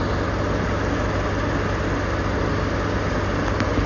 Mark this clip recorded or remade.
recorded